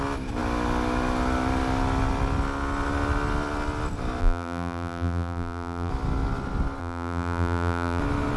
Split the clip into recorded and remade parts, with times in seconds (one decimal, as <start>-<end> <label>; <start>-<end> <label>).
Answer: 0.0-4.2 recorded; 4.2-5.9 remade; 5.9-6.8 recorded; 6.8-8.0 remade; 8.0-8.4 recorded

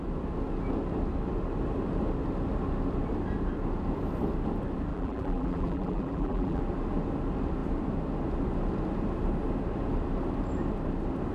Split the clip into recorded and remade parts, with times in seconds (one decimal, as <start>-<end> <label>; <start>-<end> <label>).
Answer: 0.0-4.9 recorded; 4.9-6.6 remade; 6.6-11.3 recorded

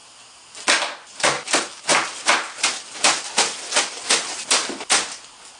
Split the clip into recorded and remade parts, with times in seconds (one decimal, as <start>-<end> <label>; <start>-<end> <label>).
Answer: 0.0-5.6 recorded